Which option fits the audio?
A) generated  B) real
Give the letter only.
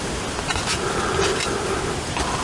B